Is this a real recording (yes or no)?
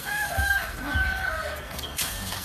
no